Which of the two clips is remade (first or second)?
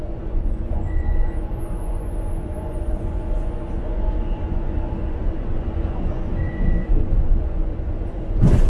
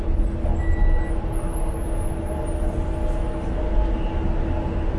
first